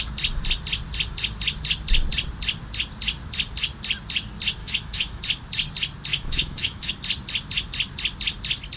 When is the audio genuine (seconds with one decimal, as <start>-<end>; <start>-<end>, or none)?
0.0-4.6; 5.2-6.1; 6.9-8.8